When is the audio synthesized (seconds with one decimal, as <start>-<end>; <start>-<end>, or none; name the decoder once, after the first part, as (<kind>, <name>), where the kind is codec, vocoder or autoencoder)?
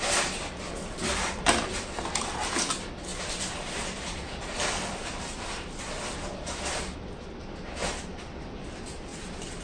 3.1-7.2 (vocoder, BigVGAN v2); 9.1-9.6